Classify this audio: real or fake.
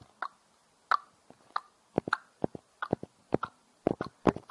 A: real